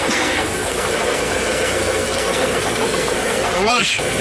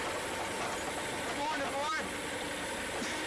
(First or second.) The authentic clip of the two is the second